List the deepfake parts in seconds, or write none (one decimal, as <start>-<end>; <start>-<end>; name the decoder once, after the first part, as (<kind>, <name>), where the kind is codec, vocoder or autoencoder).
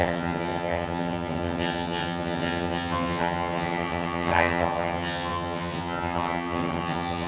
0.0-7.3 (vocoder, HiFi-GAN)